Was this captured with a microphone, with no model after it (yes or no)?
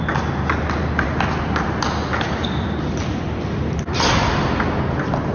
yes